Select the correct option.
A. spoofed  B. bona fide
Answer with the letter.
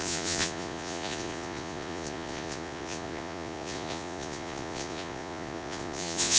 A